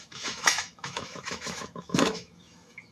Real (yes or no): no